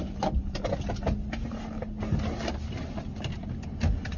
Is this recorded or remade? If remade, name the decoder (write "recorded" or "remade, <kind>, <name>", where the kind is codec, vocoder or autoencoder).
recorded